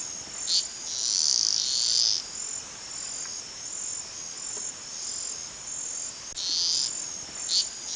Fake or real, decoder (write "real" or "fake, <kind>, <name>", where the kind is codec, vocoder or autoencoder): real